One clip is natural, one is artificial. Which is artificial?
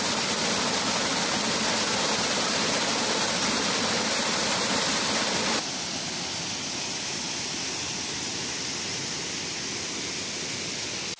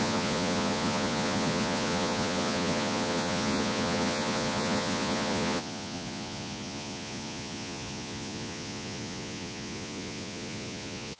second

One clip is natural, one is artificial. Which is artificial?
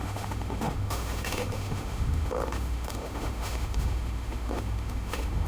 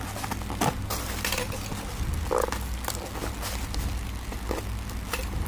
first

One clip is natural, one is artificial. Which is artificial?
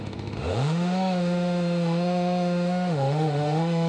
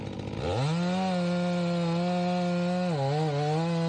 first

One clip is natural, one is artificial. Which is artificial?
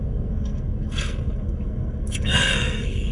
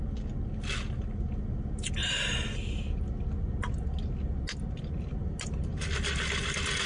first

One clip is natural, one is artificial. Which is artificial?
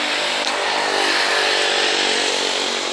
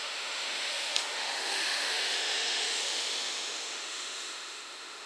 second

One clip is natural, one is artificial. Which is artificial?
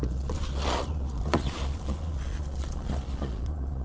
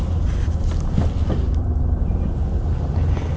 first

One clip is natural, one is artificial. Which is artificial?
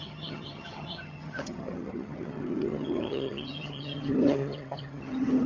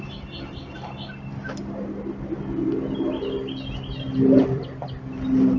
first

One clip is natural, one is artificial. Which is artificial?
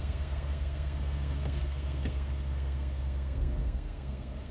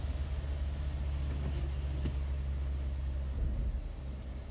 first